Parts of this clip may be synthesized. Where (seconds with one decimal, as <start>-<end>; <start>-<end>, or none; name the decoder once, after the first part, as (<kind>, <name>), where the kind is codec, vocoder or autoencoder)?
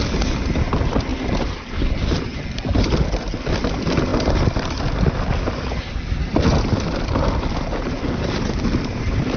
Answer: none